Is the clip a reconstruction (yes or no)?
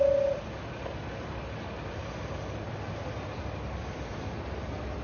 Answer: no